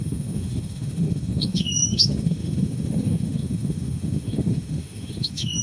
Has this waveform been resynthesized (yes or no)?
yes